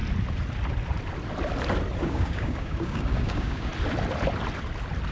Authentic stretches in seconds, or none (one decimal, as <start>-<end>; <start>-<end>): 0.0-2.0; 3.7-5.1